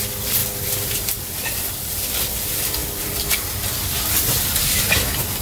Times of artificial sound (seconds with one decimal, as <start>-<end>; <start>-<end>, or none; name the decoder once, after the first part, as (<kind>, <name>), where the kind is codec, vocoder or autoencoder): 0.4-2.3 (vocoder, BigVGAN v2); 2.8-3.5